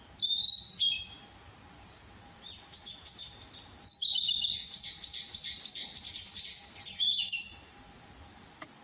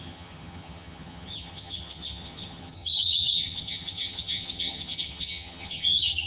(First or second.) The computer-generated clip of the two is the second